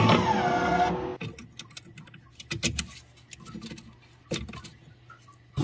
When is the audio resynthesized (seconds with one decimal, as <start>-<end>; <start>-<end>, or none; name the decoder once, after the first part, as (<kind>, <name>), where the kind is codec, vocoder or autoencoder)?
none